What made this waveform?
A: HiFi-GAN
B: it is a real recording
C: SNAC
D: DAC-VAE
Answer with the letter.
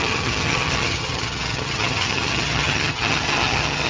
A